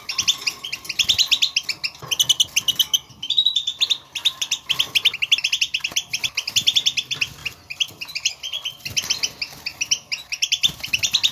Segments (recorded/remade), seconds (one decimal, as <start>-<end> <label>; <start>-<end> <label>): 0.0-7.4 recorded; 7.4-8.3 remade; 8.3-9.7 recorded; 9.7-11.3 remade